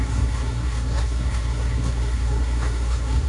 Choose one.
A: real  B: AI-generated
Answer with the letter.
B